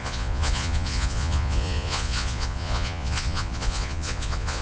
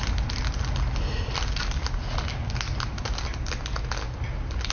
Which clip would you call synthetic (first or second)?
first